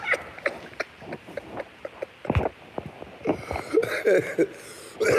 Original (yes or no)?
yes